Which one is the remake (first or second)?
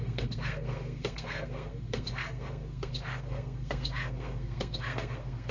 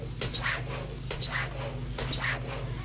first